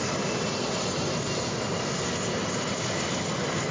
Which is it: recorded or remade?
recorded